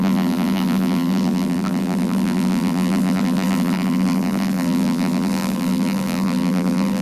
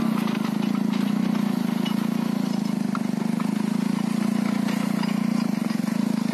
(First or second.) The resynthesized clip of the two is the first